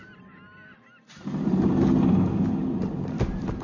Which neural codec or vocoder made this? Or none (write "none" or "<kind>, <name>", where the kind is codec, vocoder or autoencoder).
none